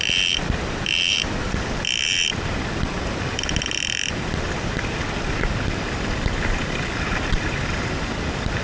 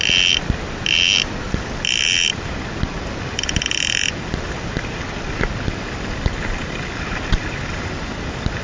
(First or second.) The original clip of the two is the second